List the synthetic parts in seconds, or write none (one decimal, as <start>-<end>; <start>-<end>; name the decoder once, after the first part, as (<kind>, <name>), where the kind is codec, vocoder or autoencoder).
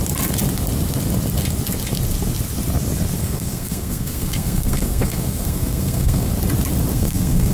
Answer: 3.2-6.3 (codec, SNAC); 6.9-7.5